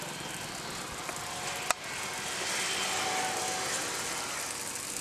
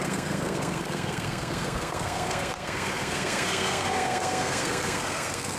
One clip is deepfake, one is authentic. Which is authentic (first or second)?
first